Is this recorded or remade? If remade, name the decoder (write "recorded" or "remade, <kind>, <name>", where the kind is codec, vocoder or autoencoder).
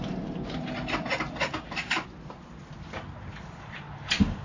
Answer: recorded